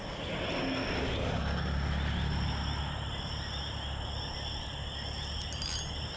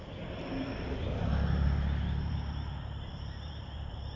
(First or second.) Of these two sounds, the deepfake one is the second